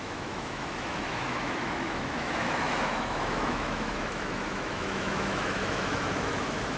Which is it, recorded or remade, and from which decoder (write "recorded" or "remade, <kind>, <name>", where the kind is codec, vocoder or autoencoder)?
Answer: remade, autoencoder, DAC-VAE